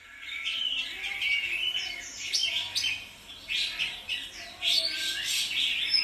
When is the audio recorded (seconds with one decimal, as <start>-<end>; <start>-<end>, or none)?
0.0-6.0